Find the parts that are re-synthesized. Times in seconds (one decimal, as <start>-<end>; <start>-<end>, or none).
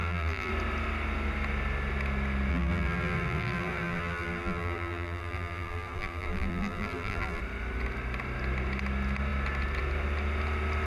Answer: 0.0-0.5; 2.5-7.4